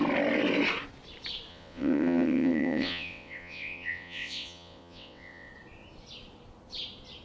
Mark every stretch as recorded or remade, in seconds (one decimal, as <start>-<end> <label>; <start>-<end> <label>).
0.0-1.5 recorded; 1.5-5.5 remade; 5.5-7.2 recorded